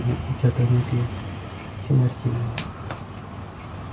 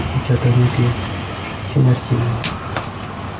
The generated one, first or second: first